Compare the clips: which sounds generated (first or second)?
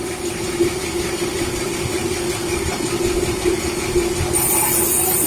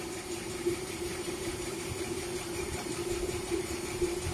second